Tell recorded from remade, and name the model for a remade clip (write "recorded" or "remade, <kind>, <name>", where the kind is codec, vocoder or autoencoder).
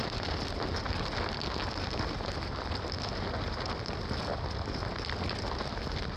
recorded